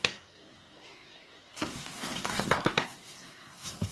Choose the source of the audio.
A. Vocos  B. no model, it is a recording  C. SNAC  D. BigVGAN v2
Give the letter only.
C